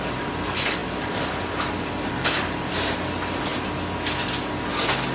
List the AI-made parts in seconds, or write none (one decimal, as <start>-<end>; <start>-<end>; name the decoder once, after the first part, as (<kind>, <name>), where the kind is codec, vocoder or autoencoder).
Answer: 0.8-2.7 (vocoder, BigVGAN v2)